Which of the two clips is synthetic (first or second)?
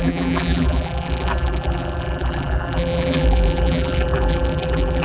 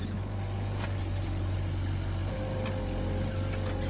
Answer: first